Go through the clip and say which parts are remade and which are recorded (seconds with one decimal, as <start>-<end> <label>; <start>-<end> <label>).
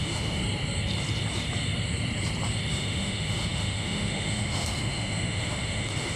0.0-0.4 remade; 0.4-2.7 recorded; 2.7-6.2 remade